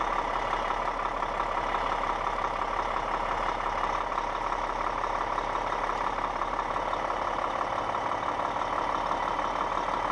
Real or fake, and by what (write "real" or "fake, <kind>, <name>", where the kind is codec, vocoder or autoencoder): real